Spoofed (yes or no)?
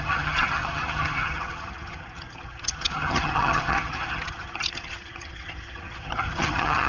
yes